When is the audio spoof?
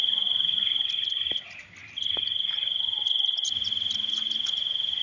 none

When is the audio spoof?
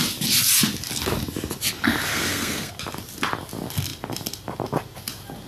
2.1-2.7 (codec, SNAC)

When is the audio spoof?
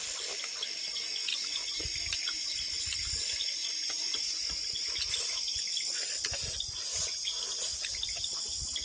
none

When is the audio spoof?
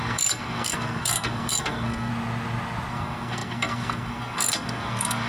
0.0-2.1 (codec, SNAC); 2.9-5.3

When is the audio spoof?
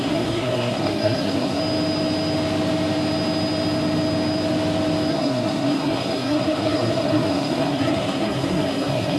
0.0-1.6 (codec, SNAC); 5.1-9.2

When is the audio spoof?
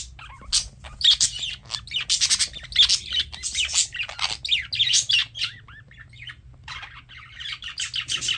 none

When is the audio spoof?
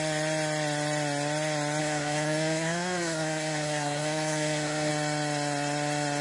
1.8-4.9 (codec, SNAC)